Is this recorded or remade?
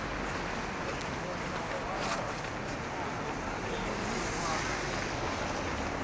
recorded